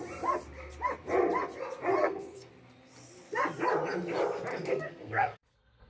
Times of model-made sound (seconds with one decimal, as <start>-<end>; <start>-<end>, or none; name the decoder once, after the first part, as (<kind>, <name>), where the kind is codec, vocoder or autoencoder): 2.0-2.5 (codec, SNAC); 4.5-5.9